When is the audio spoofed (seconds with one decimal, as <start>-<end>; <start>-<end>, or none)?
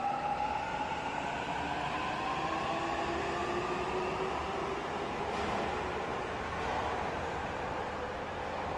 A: 0.7-2.7; 7.4-8.0